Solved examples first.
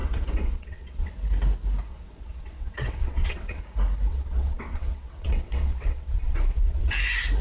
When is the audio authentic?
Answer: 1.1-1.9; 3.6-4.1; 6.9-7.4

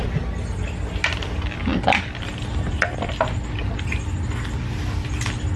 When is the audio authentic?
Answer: 0.0-5.6

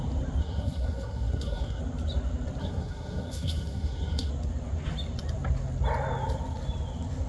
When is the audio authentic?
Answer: 0.0-0.4; 1.8-2.6; 4.3-7.3